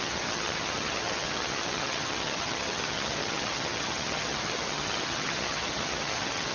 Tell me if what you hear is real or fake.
fake